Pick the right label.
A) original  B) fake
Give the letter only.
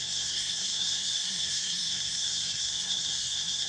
B